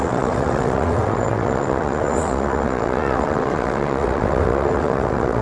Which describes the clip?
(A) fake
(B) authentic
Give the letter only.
A